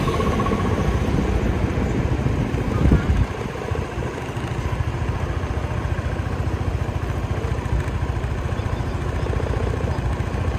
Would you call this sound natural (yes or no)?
yes